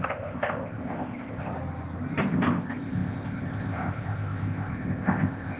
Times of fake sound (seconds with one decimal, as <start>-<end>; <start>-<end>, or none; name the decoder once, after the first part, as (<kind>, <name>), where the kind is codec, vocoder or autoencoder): 0.0-1.5 (codec, ZipCodec); 2.3-5.6

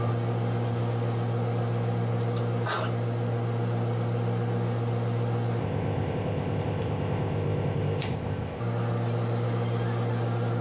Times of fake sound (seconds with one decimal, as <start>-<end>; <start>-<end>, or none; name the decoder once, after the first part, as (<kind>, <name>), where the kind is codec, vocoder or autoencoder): 5.6-8.6 (codec, ZipCodec)

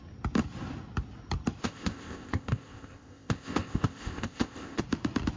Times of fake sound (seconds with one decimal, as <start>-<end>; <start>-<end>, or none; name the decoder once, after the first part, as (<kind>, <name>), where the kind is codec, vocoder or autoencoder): 1.6-4.8 (codec, ZipCodec)

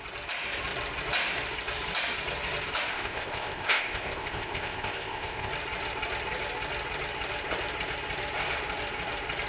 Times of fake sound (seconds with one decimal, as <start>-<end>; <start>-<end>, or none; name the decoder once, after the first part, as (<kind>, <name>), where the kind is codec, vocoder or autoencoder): 2.9-5.5 (codec, ZipCodec)

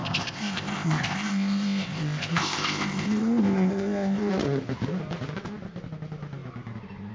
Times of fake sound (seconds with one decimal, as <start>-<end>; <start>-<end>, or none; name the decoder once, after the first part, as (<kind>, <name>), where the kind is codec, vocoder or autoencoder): 0.0-4.3 (codec, ZipCodec)

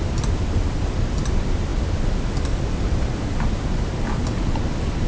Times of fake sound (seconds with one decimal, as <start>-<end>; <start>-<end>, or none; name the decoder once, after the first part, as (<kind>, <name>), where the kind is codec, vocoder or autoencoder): none